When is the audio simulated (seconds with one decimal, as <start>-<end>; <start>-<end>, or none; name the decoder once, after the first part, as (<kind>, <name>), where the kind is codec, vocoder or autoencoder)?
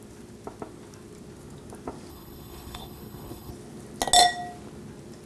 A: 2.1-3.5 (codec, HILCodec)